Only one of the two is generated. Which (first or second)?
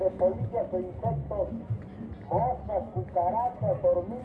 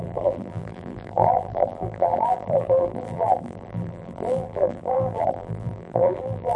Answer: second